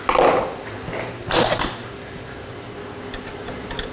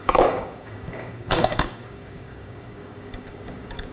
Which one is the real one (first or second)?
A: first